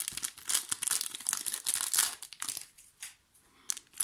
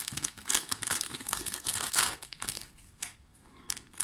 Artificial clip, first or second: second